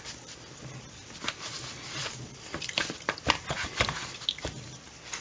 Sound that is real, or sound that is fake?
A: fake